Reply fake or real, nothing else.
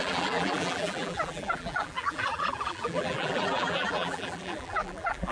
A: fake